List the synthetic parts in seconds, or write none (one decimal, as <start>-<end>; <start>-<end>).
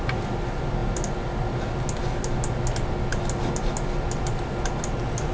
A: none